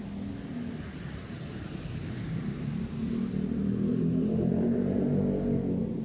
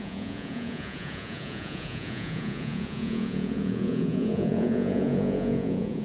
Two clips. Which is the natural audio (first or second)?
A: first